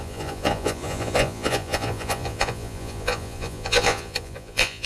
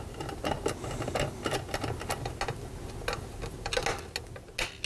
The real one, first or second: second